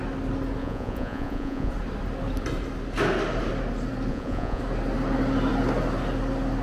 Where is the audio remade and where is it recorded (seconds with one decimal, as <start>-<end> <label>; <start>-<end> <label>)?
0.0-0.6 recorded; 0.6-1.7 remade; 1.7-4.1 recorded; 4.1-4.6 remade; 4.6-6.6 recorded